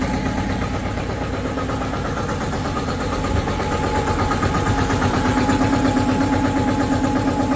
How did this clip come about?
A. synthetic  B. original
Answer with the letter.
A